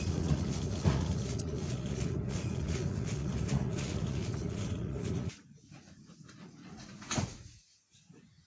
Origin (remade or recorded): remade